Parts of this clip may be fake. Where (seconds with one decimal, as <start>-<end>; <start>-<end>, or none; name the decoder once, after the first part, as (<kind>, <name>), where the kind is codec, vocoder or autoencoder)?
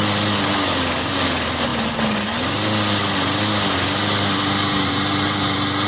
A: none